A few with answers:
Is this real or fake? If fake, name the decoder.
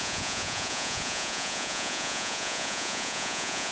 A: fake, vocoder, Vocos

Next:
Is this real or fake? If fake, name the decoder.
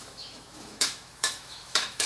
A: fake, autoencoder, DAC-VAE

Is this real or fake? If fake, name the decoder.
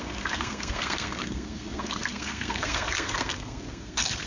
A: fake, codec, SNAC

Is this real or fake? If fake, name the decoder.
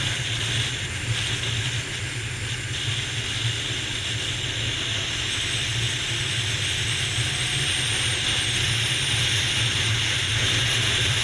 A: real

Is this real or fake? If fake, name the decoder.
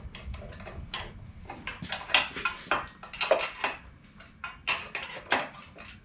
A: real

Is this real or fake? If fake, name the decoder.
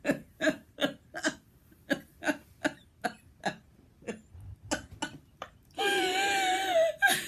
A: real